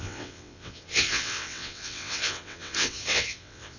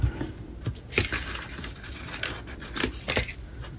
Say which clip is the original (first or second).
second